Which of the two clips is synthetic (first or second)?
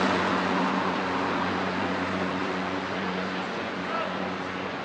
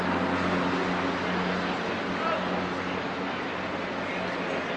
first